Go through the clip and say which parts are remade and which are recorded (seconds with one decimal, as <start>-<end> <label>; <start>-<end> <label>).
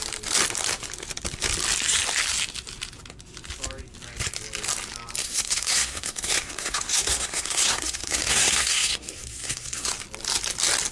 0.0-5.2 recorded; 5.2-9.9 remade; 9.9-10.9 recorded